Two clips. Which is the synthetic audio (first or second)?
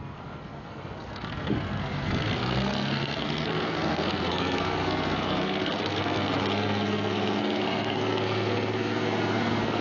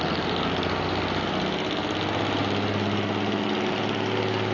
first